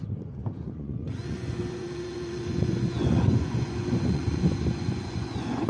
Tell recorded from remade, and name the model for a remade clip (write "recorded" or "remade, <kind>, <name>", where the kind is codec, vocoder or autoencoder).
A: remade, vocoder, Vocos